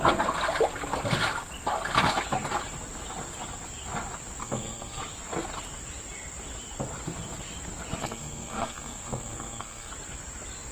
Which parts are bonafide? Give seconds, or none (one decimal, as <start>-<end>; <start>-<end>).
0.0-4.4; 5.0-8.0; 9.9-10.7